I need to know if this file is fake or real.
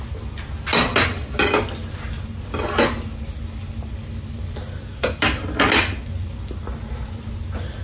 real